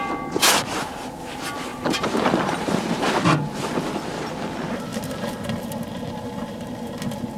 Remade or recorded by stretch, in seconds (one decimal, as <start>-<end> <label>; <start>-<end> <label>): 0.0-1.7 recorded; 1.7-3.1 remade; 3.1-4.9 recorded; 4.9-6.9 remade; 6.9-7.4 recorded